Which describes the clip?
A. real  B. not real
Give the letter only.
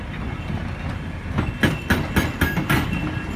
A